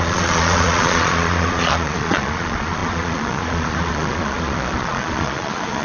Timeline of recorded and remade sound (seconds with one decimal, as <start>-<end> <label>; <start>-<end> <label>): 0.0-5.8 remade